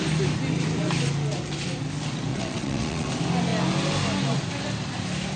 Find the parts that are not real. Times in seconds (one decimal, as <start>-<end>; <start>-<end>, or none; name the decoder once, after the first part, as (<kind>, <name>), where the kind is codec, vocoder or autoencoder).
2.3-3.1 (vocoder, WaveNeXt)